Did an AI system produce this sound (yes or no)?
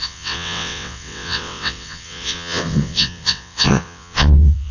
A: yes